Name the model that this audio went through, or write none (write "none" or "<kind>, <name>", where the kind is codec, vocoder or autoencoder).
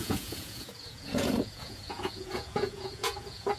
vocoder, Vocos